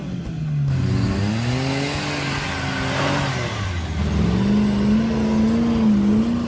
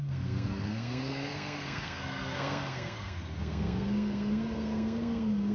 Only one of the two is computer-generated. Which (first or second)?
second